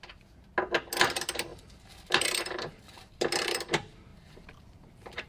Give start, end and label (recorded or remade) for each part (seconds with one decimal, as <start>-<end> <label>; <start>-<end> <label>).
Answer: 0.0-1.5 recorded; 1.5-3.1 remade; 3.1-4.1 recorded; 4.1-5.3 remade